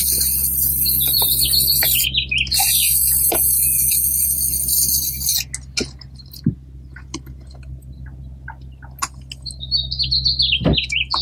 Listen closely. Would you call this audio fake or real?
real